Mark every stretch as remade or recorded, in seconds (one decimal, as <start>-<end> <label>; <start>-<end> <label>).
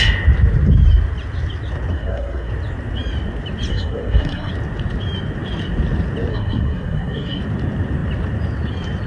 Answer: 0.0-1.9 recorded; 1.9-2.5 remade; 2.5-3.7 recorded; 3.7-4.5 remade; 4.5-6.3 recorded; 6.3-7.4 remade; 7.4-9.1 recorded